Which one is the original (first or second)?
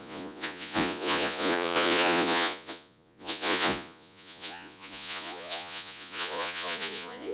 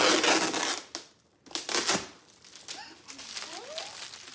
second